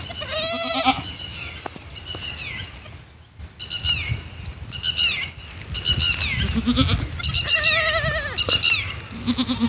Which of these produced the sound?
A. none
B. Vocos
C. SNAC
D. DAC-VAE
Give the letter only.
A